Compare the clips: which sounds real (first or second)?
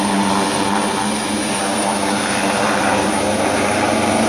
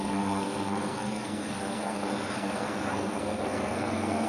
first